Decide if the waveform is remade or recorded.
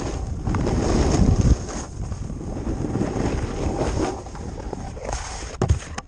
recorded